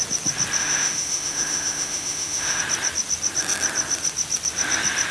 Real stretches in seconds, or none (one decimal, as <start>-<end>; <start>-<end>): 0.0-0.6; 2.6-5.1